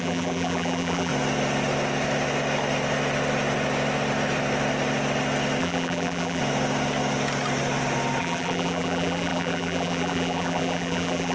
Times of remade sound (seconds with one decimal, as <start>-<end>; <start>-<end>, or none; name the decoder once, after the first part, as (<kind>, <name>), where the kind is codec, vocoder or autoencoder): 0.0-1.1 (vocoder, BigVGAN v2); 5.6-6.4; 8.2-11.3